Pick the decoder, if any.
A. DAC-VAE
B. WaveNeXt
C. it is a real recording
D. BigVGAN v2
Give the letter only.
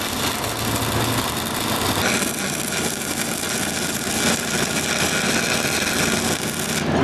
C